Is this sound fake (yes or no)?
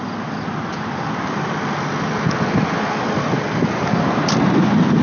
no